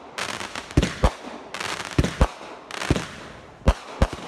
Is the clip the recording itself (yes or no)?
yes